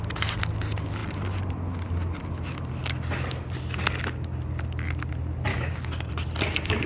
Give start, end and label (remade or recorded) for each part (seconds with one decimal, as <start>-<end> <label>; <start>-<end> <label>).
0.0-5.5 recorded; 5.5-6.1 remade; 6.1-6.9 recorded